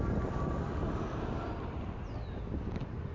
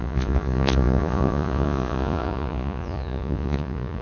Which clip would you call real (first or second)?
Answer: first